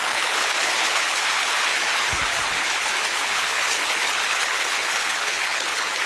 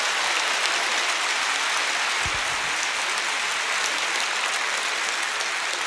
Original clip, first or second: second